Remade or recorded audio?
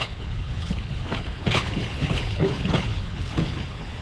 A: remade